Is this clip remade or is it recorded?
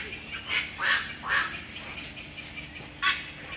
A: recorded